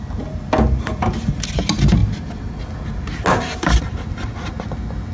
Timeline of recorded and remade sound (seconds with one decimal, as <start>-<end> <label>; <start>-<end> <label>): 0.0-5.1 recorded